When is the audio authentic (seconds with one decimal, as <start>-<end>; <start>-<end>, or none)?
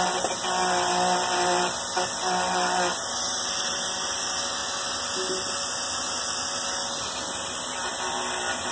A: 0.0-8.7